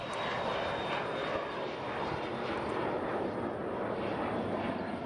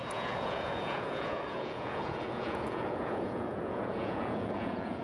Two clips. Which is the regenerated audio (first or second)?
second